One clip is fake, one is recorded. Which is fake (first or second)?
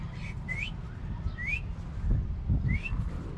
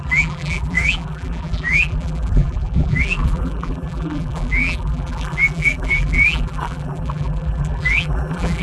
second